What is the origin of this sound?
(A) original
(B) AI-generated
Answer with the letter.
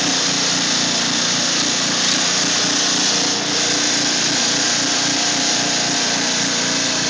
A